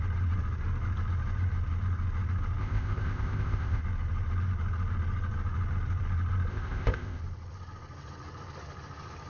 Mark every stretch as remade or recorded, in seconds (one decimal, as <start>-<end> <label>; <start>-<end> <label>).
0.0-2.6 recorded; 2.6-3.8 remade; 3.8-6.5 recorded; 6.5-7.2 remade; 7.2-9.3 recorded